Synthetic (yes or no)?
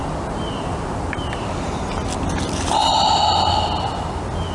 no